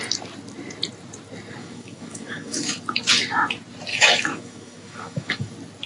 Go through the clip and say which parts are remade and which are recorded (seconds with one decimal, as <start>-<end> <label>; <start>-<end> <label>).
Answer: 0.0-1.6 recorded; 1.6-2.8 remade; 2.8-3.9 recorded; 3.9-5.5 remade; 5.5-5.9 recorded